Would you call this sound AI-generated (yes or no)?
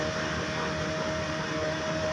no